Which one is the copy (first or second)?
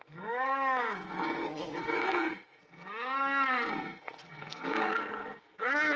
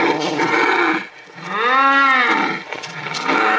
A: first